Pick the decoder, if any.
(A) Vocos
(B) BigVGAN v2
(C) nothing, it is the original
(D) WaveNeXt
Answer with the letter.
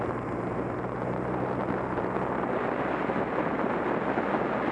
C